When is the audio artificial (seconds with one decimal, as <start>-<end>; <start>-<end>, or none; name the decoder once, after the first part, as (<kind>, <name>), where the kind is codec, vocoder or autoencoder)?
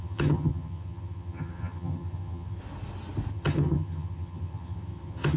0.0-2.6 (vocoder, HiFi-GAN); 3.3-5.4